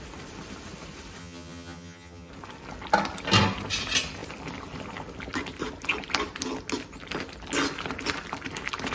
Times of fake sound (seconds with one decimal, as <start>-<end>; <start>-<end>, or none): 1.2-2.3